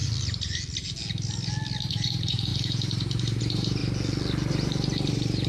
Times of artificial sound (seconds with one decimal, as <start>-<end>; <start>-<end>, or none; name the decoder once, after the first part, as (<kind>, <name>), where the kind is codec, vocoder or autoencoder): 1.9-3.8 (vocoder, BigVGAN v2); 4.5-5.5